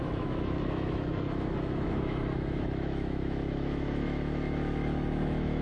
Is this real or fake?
fake